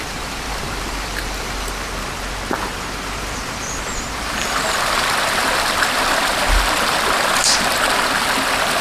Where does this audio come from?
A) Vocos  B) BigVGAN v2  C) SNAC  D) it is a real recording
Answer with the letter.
B